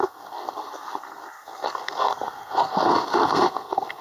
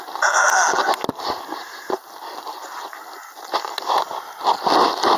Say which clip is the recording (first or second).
second